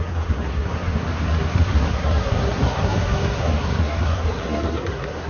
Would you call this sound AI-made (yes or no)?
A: yes